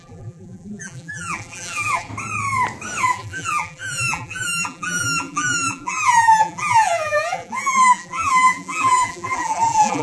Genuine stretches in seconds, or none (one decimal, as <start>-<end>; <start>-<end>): 2.1-3.0

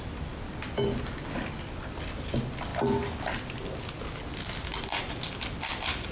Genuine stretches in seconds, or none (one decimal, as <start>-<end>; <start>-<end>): 0.0-6.1

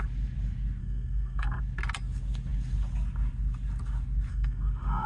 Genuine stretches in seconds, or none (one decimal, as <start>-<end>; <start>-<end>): 0.0-0.8; 1.6-4.3

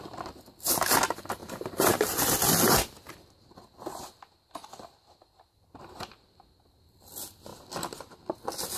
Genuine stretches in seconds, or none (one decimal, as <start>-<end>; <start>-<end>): 0.0-1.4; 2.2-8.8